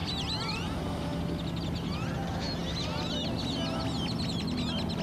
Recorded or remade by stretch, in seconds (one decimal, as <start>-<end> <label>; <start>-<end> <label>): 0.0-1.2 remade; 1.2-5.0 recorded